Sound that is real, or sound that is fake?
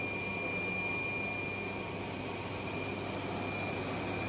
real